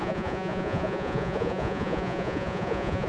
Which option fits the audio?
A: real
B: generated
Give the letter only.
B